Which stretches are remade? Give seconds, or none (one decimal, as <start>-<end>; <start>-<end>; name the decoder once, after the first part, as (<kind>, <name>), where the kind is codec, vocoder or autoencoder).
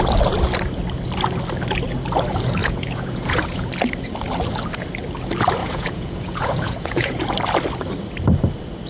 2.6-3.7 (vocoder, Vocos); 5.6-7.2